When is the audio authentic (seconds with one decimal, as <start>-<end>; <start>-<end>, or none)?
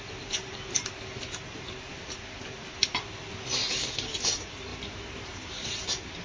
0.0-6.2